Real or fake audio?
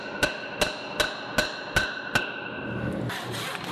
real